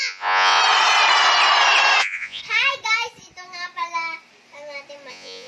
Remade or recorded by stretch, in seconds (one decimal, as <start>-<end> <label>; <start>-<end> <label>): 0.0-0.6 remade; 0.6-2.0 recorded; 2.0-2.4 remade; 2.4-5.1 recorded; 5.1-5.5 remade